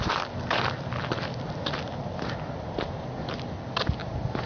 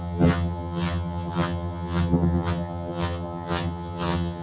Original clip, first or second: first